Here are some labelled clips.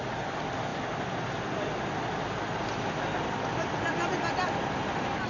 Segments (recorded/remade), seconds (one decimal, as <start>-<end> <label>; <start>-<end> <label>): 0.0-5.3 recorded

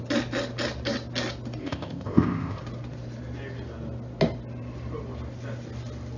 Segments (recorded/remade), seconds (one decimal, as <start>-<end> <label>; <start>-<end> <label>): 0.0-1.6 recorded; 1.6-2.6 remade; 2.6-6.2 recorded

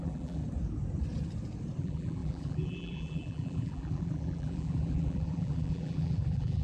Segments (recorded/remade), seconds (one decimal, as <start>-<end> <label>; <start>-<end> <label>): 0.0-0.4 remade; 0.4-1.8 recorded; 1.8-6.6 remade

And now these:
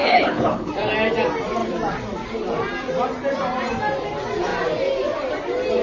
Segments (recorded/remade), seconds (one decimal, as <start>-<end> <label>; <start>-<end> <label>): 0.0-0.7 remade; 0.7-5.8 recorded

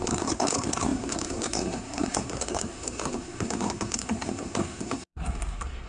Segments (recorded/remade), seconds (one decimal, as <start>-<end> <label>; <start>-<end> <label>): 0.0-5.9 remade

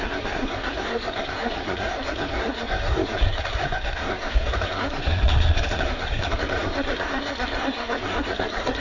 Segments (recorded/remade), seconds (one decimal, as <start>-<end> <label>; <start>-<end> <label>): 0.0-8.8 remade

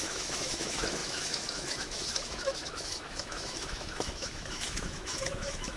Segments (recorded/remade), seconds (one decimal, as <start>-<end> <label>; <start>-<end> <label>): 0.0-5.8 remade

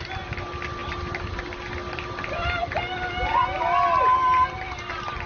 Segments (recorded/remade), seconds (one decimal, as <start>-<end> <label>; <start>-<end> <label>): 0.0-5.3 recorded